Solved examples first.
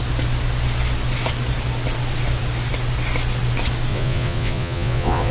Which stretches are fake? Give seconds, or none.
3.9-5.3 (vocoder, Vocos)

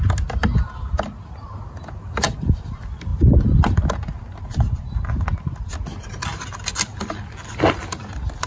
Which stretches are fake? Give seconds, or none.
none